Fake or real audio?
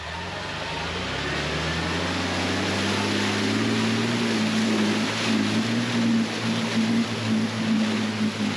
real